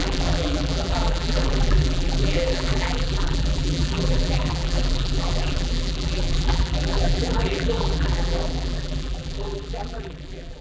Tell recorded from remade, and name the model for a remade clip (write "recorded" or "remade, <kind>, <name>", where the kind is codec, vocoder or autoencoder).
remade, vocoder, BigVGAN v2